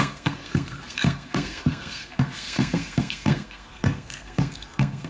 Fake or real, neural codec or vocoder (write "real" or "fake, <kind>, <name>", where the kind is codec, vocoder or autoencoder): fake, codec, SNAC